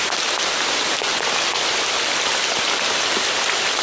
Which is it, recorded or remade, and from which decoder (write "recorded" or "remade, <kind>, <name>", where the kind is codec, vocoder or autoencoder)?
recorded